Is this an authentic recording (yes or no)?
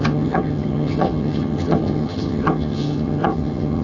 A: no